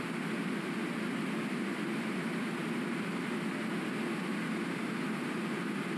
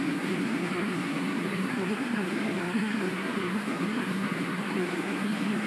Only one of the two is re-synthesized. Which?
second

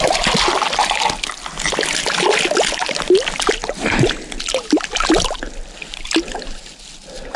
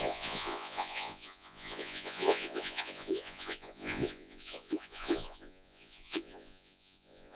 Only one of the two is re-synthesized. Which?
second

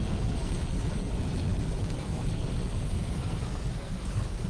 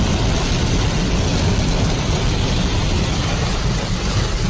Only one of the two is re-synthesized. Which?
first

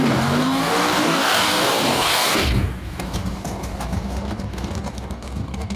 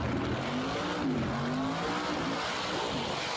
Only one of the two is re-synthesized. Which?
first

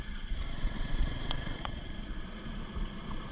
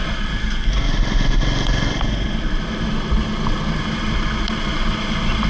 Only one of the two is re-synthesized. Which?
first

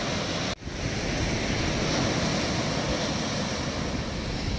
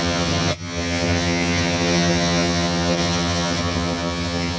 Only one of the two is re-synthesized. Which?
second